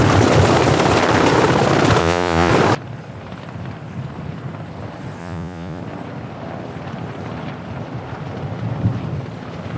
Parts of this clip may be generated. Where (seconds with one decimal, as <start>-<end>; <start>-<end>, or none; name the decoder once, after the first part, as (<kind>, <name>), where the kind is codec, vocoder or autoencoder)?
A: 2.0-2.5 (vocoder, Vocos); 5.2-5.8